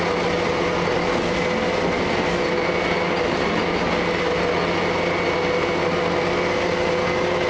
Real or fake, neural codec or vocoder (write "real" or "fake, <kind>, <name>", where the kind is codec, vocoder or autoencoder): real